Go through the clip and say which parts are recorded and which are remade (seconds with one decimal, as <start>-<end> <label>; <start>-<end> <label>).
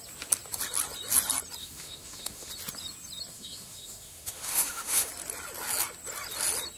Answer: 0.0-1.6 recorded; 1.6-2.5 remade; 2.5-3.3 recorded; 3.3-5.1 remade; 5.1-6.8 recorded